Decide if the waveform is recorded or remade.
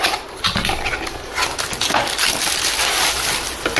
recorded